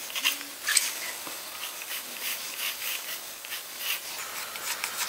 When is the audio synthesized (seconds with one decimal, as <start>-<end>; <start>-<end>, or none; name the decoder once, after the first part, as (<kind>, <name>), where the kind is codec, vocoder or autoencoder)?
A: 0.7-3.8 (codec, DAC)